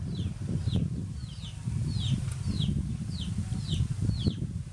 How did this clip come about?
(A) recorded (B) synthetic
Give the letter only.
A